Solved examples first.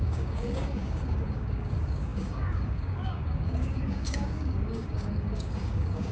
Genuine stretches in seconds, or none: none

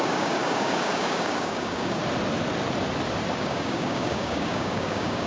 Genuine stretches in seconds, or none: 2.0-3.4

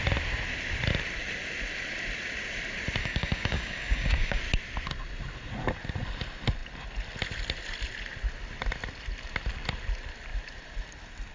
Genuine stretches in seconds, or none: 0.0-3.0; 4.4-11.3

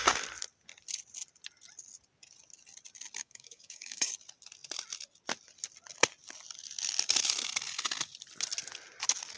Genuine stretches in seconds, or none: 0.0-3.2; 4.1-9.4

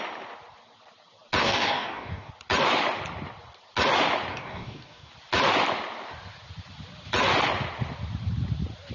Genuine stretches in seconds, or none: 0.0-1.4; 2.3-4.3; 5.1-8.9